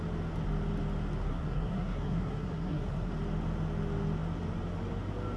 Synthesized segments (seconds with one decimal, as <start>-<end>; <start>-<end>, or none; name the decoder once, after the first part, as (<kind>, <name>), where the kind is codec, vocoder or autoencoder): 1.3-3.1 (codec, SNAC)